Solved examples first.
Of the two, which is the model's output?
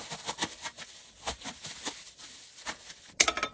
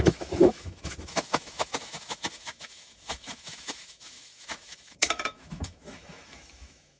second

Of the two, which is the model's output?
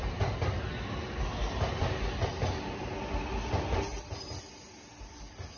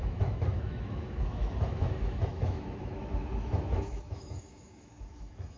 second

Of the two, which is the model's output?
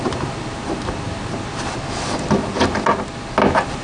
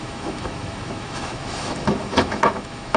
second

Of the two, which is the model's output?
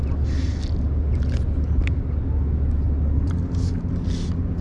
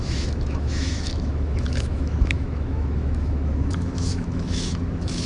second